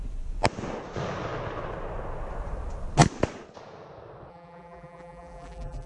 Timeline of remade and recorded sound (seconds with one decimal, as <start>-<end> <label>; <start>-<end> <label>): 0.0-4.3 recorded; 4.3-5.9 remade